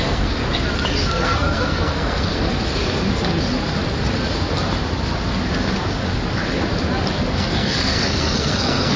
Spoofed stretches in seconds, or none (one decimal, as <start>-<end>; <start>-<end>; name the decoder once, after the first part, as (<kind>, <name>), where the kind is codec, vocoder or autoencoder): 0.0-0.4 (codec, SNAC); 1.1-2.5; 7.3-9.0